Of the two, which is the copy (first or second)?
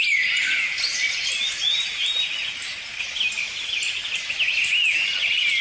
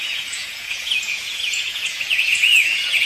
second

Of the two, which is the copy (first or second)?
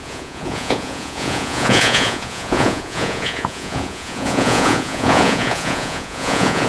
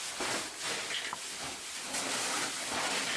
first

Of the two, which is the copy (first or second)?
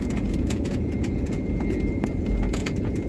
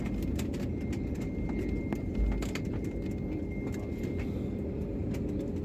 first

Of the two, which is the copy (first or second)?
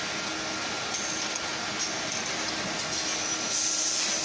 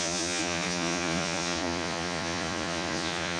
second